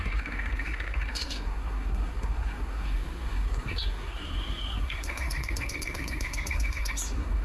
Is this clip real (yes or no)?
no